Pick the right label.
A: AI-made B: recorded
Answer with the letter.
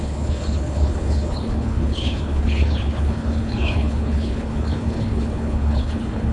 A